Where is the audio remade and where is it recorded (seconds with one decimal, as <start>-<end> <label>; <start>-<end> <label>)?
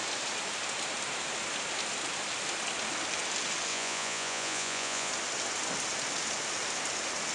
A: 0.0-3.7 recorded; 3.7-5.1 remade; 5.1-7.3 recorded